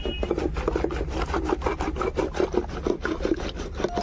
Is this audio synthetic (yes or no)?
no